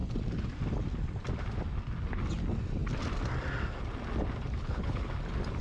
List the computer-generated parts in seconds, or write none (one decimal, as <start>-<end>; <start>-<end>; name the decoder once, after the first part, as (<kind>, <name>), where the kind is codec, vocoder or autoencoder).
4.6-5.1 (codec, HILCodec)